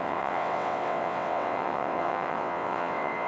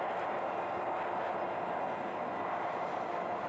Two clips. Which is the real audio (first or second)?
second